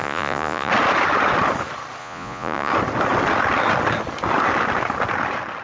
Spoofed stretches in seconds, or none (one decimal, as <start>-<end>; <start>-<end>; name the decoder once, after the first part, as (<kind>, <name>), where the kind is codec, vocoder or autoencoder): 0.0-0.7 (vocoder, Vocos); 2.0-2.7